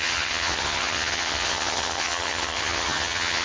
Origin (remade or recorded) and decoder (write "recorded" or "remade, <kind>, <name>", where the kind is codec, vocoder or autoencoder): remade, vocoder, HiFi-GAN